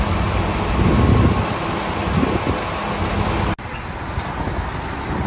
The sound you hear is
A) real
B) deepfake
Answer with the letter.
A